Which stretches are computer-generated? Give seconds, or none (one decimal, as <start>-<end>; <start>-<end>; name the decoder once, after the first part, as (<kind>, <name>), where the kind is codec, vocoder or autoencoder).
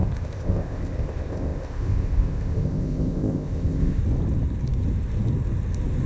0.0-4.0 (codec, ZipCodec)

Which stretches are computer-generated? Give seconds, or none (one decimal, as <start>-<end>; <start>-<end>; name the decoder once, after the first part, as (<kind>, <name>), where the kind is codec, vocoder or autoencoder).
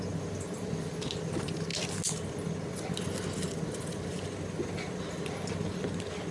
none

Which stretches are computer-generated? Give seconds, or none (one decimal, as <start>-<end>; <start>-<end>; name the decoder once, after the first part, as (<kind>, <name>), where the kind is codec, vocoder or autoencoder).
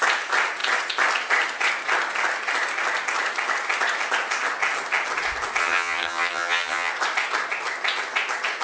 5.6-6.9 (vocoder, HiFi-GAN)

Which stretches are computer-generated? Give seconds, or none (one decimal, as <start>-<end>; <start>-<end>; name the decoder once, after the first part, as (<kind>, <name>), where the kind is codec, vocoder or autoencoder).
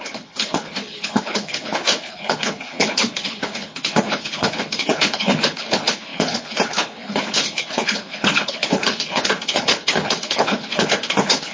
0.0-11.5 (codec, HILCodec)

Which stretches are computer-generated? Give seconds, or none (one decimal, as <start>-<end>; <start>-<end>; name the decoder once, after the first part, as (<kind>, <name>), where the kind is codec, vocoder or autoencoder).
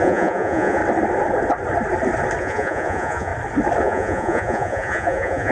0.0-0.8 (vocoder, Vocos); 2.4-3.3; 3.8-5.5